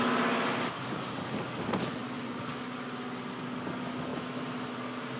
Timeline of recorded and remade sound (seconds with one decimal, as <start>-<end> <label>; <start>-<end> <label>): 0.0-5.2 recorded